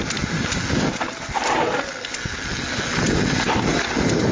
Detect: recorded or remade recorded